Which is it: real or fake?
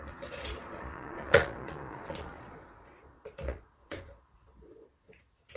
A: fake